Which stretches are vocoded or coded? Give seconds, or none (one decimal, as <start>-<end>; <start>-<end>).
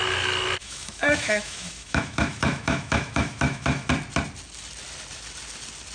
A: 0.6-3.9